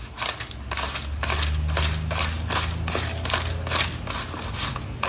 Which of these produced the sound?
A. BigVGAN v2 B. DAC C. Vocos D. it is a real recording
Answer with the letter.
D